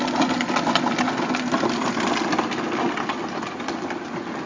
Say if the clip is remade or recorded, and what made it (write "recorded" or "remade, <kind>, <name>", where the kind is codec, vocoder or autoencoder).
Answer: recorded